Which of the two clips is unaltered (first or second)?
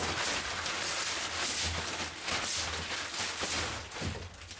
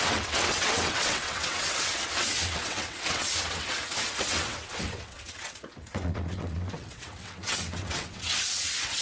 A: first